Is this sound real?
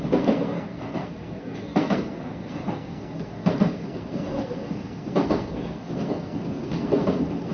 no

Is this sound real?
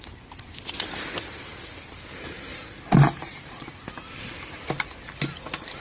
yes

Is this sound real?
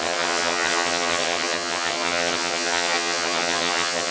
no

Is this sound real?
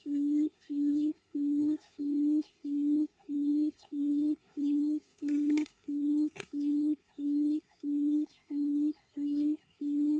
no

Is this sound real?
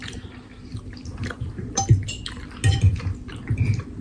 yes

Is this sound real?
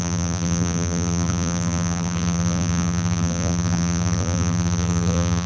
no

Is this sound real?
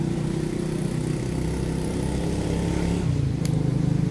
yes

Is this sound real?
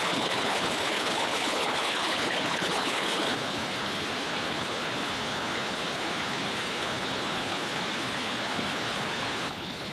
no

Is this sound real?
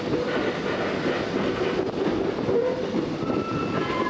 yes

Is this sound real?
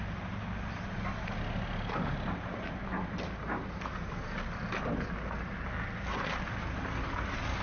yes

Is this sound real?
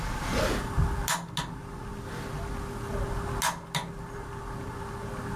yes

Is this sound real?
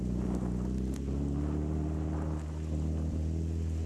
yes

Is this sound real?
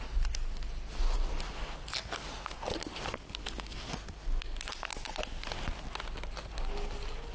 yes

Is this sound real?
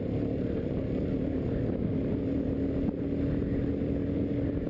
yes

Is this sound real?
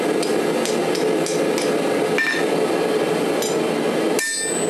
yes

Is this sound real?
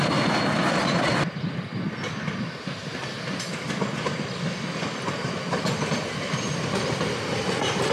yes